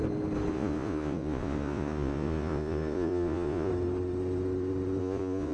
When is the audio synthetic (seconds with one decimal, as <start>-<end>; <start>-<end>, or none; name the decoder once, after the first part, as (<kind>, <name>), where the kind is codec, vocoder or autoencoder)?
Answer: 0.5-3.7 (vocoder, Vocos); 5.0-5.5